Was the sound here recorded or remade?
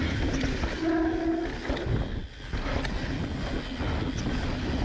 recorded